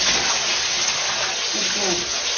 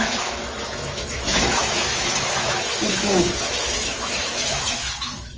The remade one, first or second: second